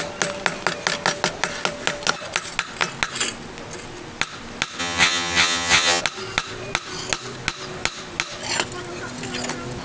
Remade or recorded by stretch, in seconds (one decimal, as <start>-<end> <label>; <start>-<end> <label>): 0.0-4.8 recorded; 4.8-6.0 remade; 6.0-9.8 recorded